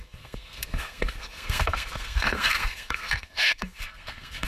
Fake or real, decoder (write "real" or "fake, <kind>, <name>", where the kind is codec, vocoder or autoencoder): fake, codec, SNAC